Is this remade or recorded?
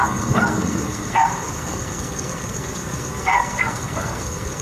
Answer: remade